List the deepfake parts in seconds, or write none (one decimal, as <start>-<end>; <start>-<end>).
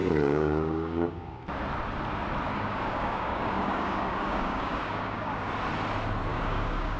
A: 0.0-1.5; 2.5-5.5; 6.3-7.0